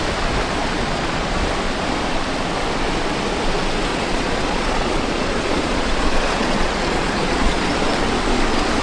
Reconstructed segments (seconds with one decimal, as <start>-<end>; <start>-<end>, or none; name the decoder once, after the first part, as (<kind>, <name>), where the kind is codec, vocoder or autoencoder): 0.6-1.4 (vocoder, Vocos); 3.9-7.7